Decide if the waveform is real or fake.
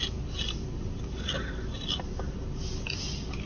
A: real